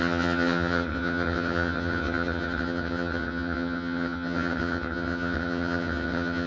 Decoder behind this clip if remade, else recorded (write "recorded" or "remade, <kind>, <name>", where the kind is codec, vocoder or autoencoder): remade, vocoder, HiFi-GAN